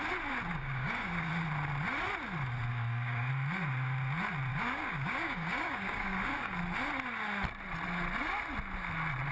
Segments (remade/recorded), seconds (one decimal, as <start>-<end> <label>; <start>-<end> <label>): 0.0-0.5 recorded; 0.5-1.3 remade; 1.3-2.7 recorded; 2.7-3.3 remade; 3.3-4.5 recorded; 4.5-6.5 remade; 6.5-9.3 recorded